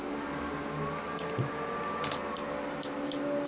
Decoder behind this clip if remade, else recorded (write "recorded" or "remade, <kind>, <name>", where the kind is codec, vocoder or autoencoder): recorded